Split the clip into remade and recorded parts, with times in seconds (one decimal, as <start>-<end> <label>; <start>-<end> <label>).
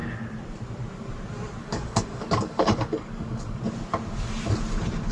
0.0-1.6 recorded; 1.6-3.6 remade; 3.6-5.1 recorded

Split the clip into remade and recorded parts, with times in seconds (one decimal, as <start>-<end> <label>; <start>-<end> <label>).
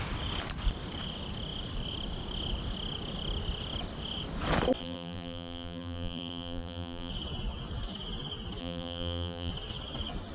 0.0-4.8 recorded; 4.8-7.1 remade; 7.1-8.6 recorded; 8.6-9.5 remade; 9.5-10.3 recorded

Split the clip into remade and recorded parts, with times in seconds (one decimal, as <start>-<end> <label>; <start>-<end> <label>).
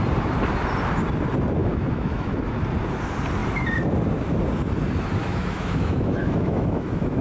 0.0-1.6 recorded; 1.6-2.3 remade; 2.3-5.2 recorded; 5.2-7.2 remade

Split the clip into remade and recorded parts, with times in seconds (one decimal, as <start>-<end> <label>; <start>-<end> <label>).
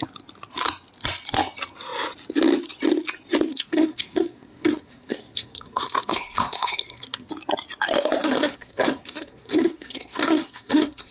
0.0-3.5 recorded; 3.5-7.3 remade; 7.3-8.2 recorded; 8.2-11.1 remade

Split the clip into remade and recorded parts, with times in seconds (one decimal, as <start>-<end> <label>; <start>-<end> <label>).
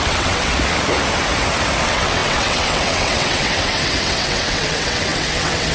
0.0-0.5 remade; 0.5-1.8 recorded; 1.8-5.7 remade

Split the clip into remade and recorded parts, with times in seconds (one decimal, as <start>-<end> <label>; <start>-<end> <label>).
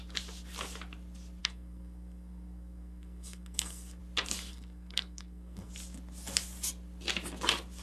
0.0-1.4 recorded; 1.4-4.0 remade; 4.0-4.5 recorded; 4.5-5.7 remade; 5.7-7.8 recorded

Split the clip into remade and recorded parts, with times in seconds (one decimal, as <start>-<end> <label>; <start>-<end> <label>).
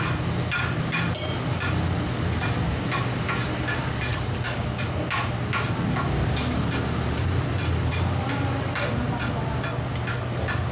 0.0-10.7 recorded